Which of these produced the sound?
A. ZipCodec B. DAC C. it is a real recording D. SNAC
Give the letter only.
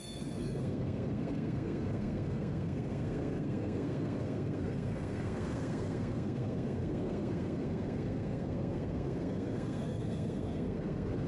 D